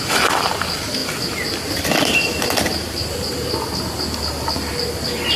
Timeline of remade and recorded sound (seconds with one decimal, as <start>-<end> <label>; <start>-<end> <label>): 0.0-5.4 recorded